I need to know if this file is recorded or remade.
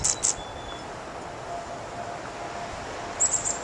recorded